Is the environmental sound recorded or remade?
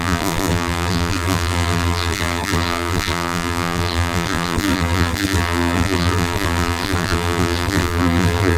remade